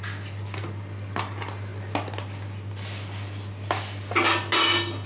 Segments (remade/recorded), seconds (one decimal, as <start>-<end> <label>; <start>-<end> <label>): 0.0-5.1 recorded